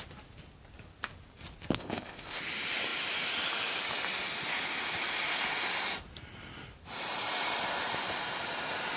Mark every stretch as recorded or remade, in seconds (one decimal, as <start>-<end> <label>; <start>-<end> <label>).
0.0-1.8 recorded; 1.8-2.4 remade; 2.4-9.0 recorded